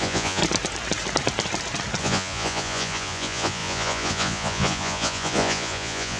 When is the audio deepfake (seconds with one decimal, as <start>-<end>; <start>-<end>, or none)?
0.0-0.4; 2.0-6.2